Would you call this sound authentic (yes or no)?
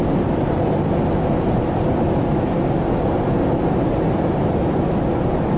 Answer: yes